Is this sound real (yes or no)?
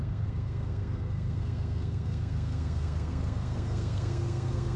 no